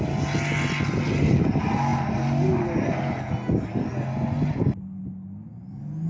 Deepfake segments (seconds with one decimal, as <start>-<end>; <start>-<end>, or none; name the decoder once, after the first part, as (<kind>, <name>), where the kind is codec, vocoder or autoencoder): none